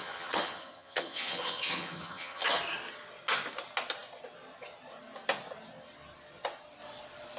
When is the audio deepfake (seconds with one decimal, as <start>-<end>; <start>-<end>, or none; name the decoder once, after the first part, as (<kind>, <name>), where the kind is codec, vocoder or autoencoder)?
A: 0.0-2.6 (vocoder, HiFi-GAN)